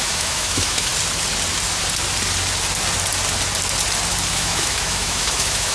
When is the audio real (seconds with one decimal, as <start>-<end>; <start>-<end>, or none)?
0.9-4.3